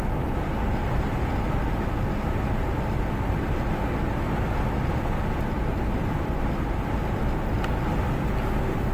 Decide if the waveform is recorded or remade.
recorded